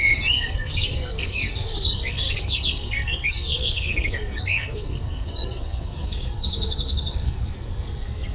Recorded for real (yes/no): no